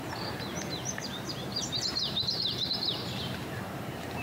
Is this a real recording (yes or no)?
no